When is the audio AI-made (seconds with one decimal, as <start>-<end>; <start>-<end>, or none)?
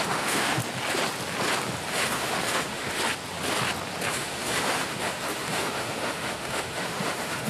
0.0-0.6; 1.9-3.0; 4.1-7.5